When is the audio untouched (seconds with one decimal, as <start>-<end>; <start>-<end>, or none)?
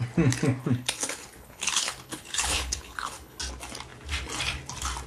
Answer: 0.0-0.6; 3.4-5.1